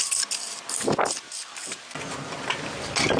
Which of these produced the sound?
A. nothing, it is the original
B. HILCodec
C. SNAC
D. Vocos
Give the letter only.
A